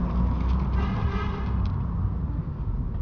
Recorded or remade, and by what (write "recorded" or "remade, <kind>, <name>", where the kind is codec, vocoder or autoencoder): recorded